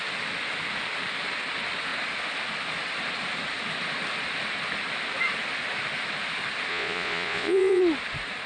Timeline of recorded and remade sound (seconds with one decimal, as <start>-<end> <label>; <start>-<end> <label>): 0.0-6.7 recorded; 6.7-7.8 remade; 7.8-8.5 recorded

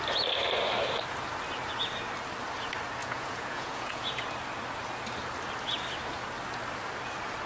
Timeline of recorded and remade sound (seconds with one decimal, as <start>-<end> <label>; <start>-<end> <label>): 0.0-3.0 recorded; 3.0-4.2 remade; 4.2-7.5 recorded

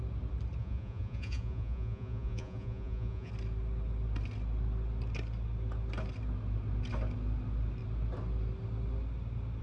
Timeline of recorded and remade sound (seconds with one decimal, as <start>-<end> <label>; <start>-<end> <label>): 0.0-0.6 recorded; 0.6-3.3 remade; 3.3-9.6 recorded

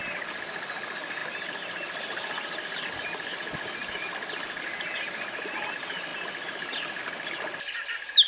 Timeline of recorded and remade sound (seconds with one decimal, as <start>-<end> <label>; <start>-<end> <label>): 0.0-8.3 recorded

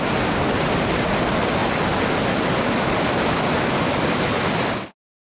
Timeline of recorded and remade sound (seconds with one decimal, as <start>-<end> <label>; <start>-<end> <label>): 0.0-5.2 recorded

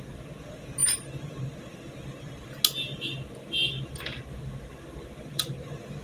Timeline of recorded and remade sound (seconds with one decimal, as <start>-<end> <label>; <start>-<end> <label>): 0.0-6.0 recorded

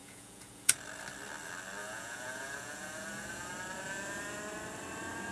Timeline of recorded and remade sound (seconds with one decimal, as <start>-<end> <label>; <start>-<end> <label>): 0.0-0.7 remade; 0.7-1.8 recorded; 1.8-3.5 remade; 3.5-5.3 recorded

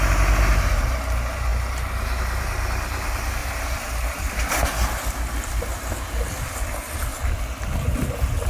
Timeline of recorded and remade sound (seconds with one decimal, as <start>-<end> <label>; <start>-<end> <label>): 0.0-8.5 recorded